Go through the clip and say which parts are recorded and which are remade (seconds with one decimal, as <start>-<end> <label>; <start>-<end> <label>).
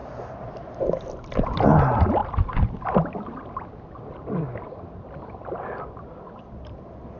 0.0-7.2 recorded